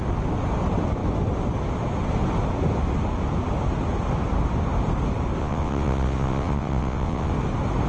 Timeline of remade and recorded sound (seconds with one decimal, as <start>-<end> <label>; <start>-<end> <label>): 0.0-5.4 recorded; 5.4-7.3 remade; 7.3-7.9 recorded